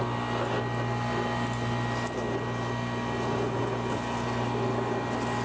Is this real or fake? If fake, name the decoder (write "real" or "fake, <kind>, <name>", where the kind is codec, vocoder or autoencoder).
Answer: real